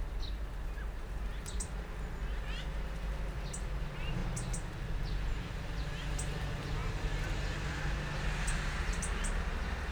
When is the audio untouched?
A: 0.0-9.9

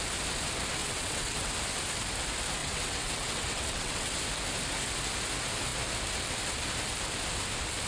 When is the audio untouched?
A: 0.0-0.8; 1.5-2.6; 4.1-7.9

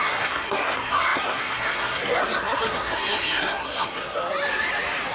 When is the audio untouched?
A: 4.2-5.1

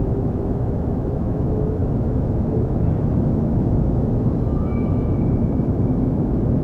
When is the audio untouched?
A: none

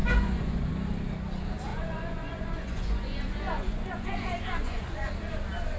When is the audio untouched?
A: 0.7-1.7; 5.1-5.8